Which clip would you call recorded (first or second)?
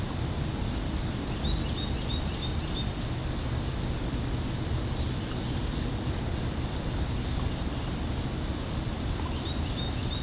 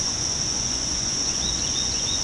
first